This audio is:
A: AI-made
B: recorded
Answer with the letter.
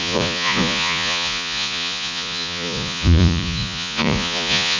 A